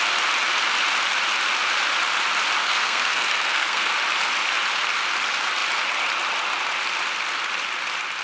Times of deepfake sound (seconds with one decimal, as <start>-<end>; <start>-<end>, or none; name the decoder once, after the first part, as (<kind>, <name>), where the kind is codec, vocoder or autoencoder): 2.6-3.9 (codec, SNAC)

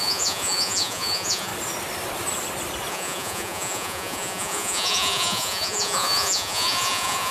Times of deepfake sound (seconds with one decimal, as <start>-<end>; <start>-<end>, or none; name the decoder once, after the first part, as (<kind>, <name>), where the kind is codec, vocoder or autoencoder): 0.0-1.5 (vocoder, Vocos); 2.9-7.3

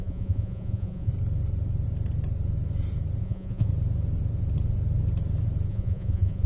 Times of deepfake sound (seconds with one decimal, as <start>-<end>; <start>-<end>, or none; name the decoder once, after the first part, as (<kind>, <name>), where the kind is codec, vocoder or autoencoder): 0.0-1.1 (vocoder, Vocos); 3.2-3.7; 5.7-6.5

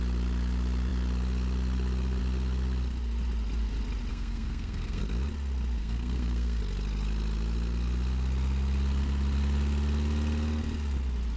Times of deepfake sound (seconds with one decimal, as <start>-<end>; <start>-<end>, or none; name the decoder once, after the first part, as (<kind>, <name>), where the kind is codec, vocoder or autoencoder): 4.1-5.0 (codec, SNAC); 5.8-6.6

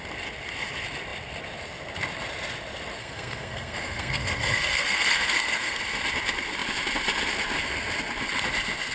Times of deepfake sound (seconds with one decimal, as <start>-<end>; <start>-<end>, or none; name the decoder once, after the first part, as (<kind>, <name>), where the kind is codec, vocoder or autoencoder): 3.0-5.8 (codec, SNAC)

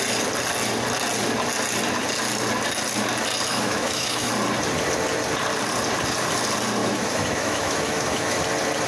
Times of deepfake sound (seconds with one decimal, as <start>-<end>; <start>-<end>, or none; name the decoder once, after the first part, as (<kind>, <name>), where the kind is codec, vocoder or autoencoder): 3.5-4.3 (autoencoder, DAC-VAE); 6.8-8.4

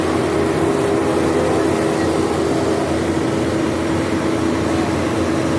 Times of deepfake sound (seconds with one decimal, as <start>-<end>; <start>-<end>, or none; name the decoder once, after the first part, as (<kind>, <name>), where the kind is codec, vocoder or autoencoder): none

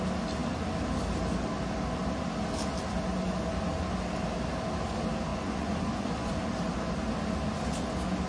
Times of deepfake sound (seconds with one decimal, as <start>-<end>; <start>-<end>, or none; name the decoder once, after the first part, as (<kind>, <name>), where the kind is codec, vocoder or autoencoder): 5.3-6.3 (vocoder, Vocos)